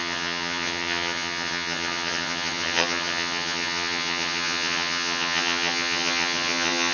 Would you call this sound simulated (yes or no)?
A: yes